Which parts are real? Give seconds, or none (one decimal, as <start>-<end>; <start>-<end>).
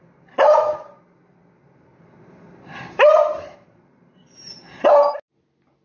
0.0-1.9; 5.0-5.8